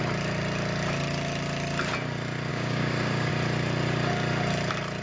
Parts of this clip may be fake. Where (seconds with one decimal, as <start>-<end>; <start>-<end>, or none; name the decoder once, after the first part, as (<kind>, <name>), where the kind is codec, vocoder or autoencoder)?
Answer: 2.5-3.3 (codec, DAC)